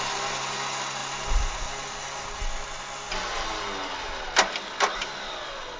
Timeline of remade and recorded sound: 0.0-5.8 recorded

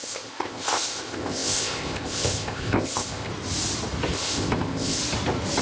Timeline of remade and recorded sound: 0.0-3.3 remade; 3.3-4.1 recorded; 4.1-5.0 remade; 5.0-5.6 recorded

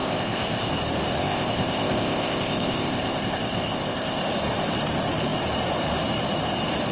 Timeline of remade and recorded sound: 0.0-0.7 remade; 0.7-1.2 recorded; 1.2-4.2 remade; 4.2-6.9 recorded

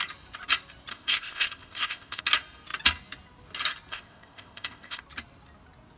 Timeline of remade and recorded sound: 0.0-0.9 recorded; 0.9-2.2 remade; 2.2-3.9 recorded; 3.9-5.0 remade; 5.0-6.0 recorded